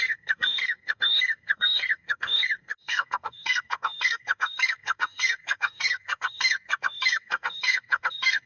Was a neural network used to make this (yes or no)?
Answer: yes